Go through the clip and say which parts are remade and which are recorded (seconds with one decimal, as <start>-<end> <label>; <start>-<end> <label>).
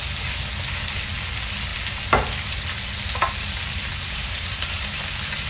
0.0-3.9 recorded; 3.9-5.0 remade; 5.0-5.5 recorded